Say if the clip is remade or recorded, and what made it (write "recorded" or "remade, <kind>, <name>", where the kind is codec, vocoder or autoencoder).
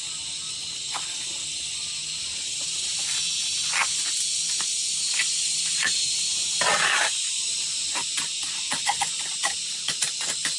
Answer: recorded